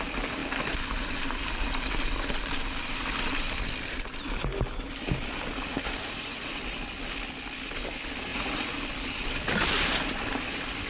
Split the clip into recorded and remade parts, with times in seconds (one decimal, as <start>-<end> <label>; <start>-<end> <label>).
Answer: 0.0-6.0 recorded; 6.0-6.6 remade; 6.6-8.3 recorded; 8.3-8.8 remade; 8.8-10.9 recorded